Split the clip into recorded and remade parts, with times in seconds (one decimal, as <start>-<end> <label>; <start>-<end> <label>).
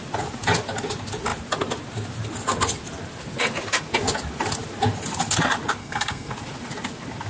0.0-5.8 recorded; 5.8-6.3 remade; 6.3-7.3 recorded